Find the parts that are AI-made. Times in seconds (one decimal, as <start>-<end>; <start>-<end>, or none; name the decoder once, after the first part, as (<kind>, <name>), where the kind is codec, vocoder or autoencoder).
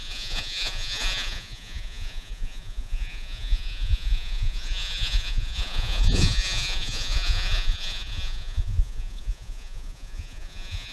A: 0.0-10.9 (vocoder, Vocos)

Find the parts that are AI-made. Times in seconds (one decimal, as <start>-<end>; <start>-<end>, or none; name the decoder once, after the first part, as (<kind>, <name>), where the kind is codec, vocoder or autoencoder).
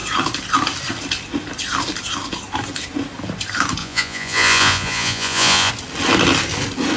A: 3.8-5.7 (vocoder, Vocos)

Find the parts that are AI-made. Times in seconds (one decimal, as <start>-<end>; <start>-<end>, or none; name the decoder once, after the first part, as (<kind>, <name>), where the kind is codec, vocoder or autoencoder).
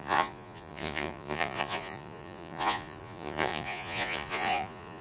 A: 0.0-5.0 (vocoder, Vocos)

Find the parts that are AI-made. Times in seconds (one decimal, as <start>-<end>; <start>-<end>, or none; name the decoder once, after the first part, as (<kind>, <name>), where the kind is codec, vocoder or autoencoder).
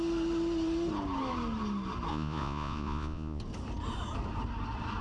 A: 2.1-3.4 (vocoder, Vocos)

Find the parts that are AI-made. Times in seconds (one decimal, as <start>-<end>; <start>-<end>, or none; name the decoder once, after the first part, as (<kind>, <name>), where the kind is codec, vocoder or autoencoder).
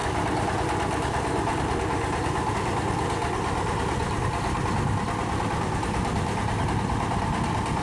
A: none